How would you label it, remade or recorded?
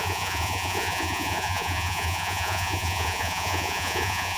remade